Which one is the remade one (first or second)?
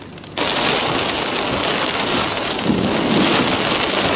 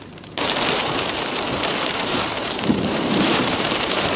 second